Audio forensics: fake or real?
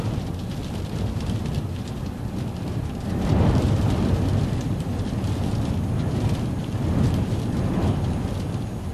real